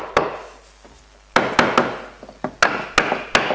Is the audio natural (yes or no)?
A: yes